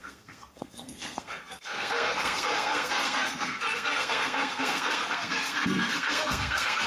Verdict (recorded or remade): remade